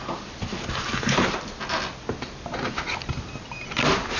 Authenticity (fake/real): real